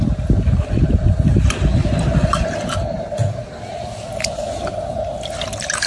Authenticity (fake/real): real